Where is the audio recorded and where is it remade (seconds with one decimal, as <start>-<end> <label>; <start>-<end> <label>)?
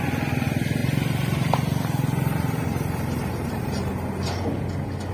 0.0-0.8 recorded; 0.8-3.9 remade; 3.9-5.1 recorded